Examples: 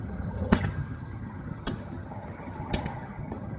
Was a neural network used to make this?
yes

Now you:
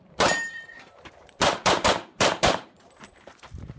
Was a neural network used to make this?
yes